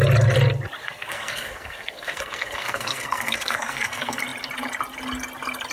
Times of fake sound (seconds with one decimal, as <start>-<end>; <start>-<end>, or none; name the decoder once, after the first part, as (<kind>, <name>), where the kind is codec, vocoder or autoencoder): 0.8-4.2 (codec, SNAC)